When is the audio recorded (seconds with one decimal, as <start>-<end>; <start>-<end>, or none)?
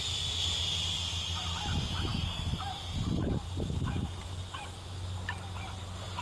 0.0-6.2